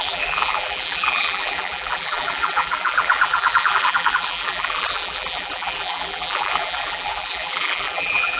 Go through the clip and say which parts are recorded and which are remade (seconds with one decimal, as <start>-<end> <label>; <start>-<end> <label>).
0.0-8.4 remade